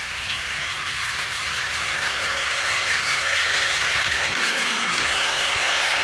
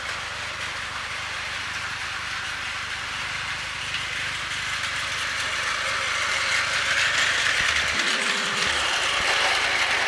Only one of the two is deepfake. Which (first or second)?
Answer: first